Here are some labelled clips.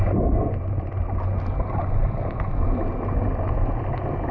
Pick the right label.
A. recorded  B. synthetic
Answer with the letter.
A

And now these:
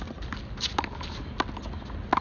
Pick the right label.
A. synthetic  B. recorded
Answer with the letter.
B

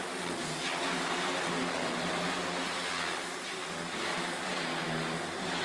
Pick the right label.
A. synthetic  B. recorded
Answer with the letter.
B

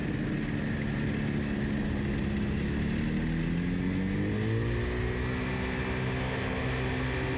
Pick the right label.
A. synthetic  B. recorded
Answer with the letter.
B